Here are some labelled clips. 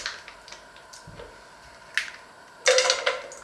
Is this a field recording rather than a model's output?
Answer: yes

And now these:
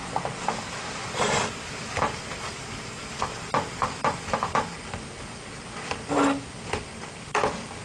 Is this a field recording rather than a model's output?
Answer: yes